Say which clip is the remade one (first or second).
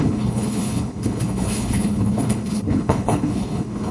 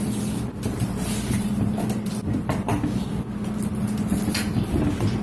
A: first